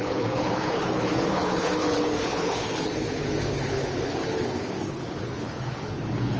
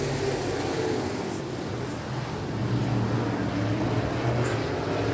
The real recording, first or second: second